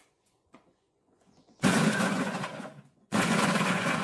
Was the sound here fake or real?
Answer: fake